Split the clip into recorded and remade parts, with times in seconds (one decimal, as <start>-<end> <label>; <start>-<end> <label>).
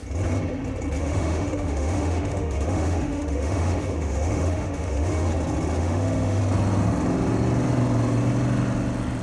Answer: 0.0-1.0 recorded; 1.0-5.3 remade; 5.3-5.8 recorded; 5.8-6.4 remade; 6.4-9.2 recorded